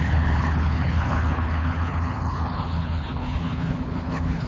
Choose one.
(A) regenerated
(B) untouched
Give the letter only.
A